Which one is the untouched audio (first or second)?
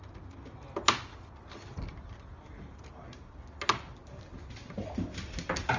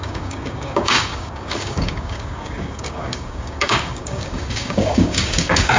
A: first